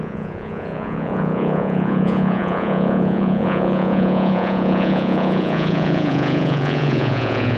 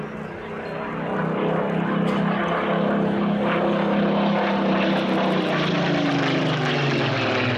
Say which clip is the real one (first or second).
second